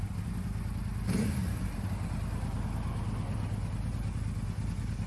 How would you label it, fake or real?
real